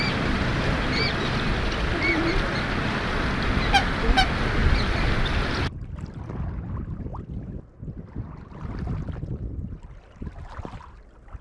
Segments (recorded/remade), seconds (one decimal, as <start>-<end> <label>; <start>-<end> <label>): 0.0-11.4 recorded